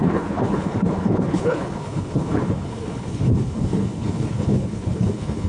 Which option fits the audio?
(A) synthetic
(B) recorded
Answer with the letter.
A